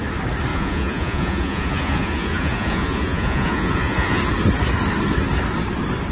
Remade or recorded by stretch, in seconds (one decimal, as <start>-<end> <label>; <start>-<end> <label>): 0.0-0.5 recorded; 0.5-4.2 remade; 4.2-6.1 recorded